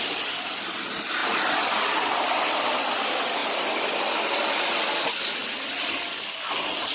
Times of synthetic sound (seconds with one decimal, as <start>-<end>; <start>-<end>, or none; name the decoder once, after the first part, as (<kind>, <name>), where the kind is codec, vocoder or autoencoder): none